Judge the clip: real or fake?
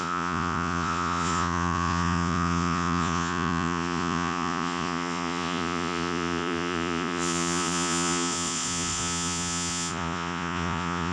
fake